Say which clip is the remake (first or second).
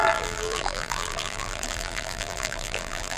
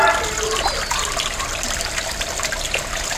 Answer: first